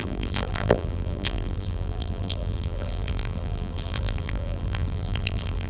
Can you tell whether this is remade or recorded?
remade